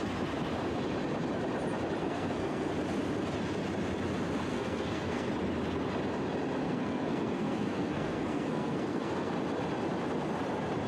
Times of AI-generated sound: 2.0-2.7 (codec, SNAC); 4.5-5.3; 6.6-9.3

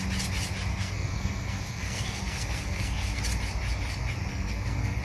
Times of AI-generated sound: 0.7-3.2 (codec, SNAC); 4.3-5.0

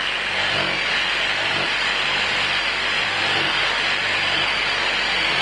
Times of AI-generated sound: none

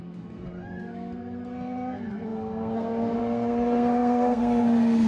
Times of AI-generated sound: 0.0-5.1 (codec, SNAC)

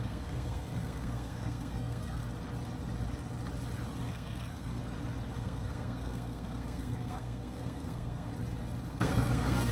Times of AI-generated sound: 0.0-2.2 (codec, SNAC); 4.1-4.8; 5.3-8.3; 8.9-9.7

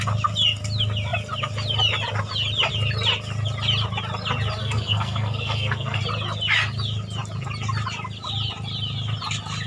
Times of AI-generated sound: 4.6-6.0 (codec, SNAC)

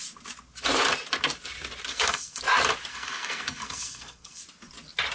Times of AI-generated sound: 1.9-2.4 (codec, SNAC); 2.9-4.4

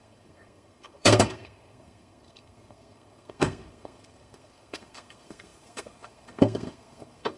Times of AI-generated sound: 0.0-7.4 (codec, SNAC)